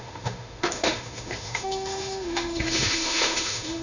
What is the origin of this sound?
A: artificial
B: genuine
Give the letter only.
A